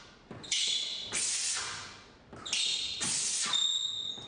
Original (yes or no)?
yes